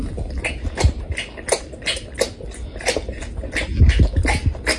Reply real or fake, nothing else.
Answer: real